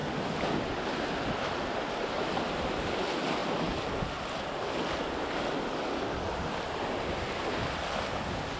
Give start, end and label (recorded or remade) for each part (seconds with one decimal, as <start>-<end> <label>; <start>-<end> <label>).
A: 0.0-8.6 recorded